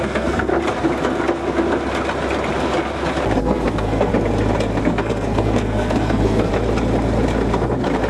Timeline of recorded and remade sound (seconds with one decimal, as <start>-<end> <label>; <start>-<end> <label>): 0.0-0.5 remade; 0.5-3.4 recorded; 3.4-4.1 remade; 4.1-4.8 recorded; 4.8-6.5 remade; 6.5-8.1 recorded